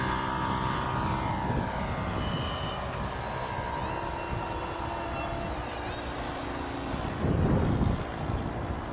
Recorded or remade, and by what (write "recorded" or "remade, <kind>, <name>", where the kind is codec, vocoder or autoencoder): recorded